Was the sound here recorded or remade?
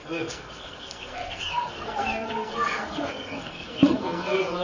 remade